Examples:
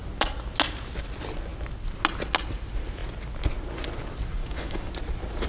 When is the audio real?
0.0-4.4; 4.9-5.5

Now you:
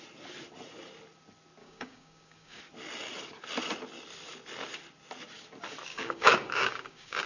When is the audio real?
0.0-1.6; 2.6-5.9

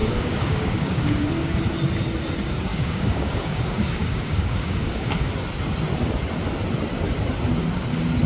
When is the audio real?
1.6-2.7; 5.3-8.3

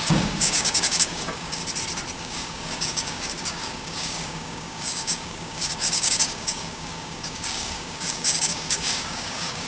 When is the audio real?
1.6-2.2